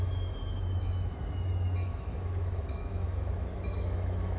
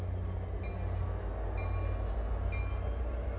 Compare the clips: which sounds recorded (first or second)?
second